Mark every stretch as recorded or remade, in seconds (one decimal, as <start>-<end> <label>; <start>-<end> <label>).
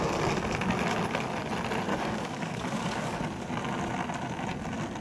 0.0-1.9 recorded; 1.9-3.2 remade; 3.2-5.0 recorded